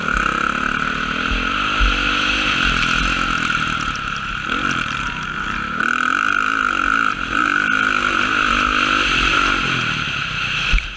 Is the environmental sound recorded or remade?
recorded